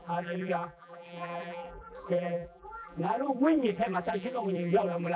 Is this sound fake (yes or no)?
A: yes